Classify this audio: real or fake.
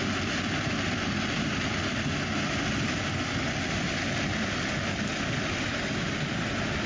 real